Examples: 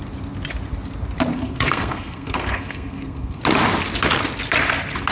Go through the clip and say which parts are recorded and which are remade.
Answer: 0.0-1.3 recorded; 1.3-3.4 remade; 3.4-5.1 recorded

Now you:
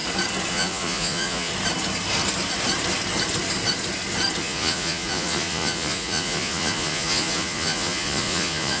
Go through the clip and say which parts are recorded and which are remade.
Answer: 0.0-0.5 recorded; 0.5-1.5 remade; 1.5-4.4 recorded; 4.4-8.8 remade